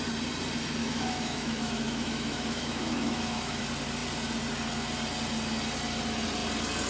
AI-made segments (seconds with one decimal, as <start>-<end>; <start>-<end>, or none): 0.8-3.6